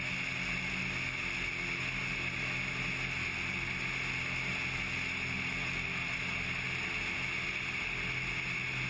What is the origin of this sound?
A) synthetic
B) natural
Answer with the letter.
B